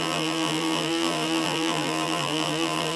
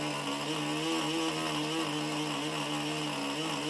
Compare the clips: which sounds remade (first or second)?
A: first